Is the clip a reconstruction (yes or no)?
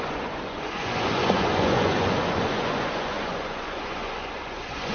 yes